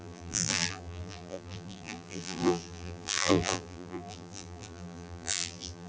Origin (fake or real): fake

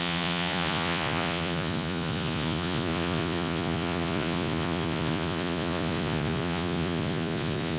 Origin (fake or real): fake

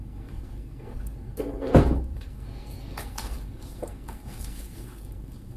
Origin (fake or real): fake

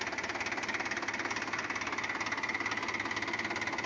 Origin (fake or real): real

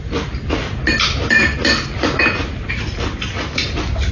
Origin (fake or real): real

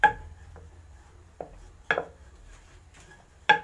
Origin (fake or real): real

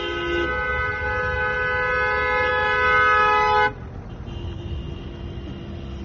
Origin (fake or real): real